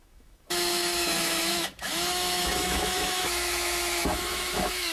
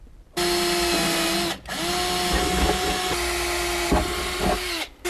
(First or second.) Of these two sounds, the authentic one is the second